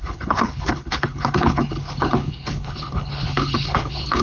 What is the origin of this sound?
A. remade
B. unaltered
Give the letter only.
A